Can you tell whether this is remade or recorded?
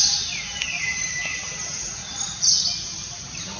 recorded